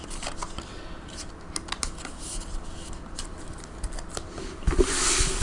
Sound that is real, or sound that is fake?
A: real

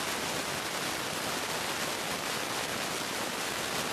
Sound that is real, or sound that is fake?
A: real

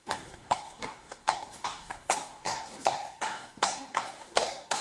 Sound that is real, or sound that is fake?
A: fake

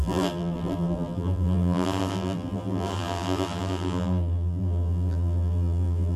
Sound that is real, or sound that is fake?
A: fake